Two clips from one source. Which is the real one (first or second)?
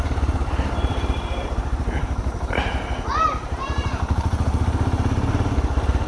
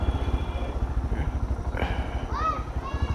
second